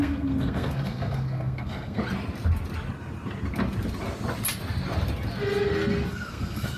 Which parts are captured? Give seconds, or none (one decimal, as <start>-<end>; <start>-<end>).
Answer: 2.0-6.1